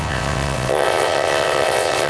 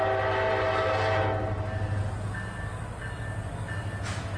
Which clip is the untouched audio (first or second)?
second